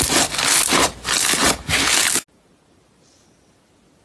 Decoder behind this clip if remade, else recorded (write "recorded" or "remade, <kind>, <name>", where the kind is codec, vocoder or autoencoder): recorded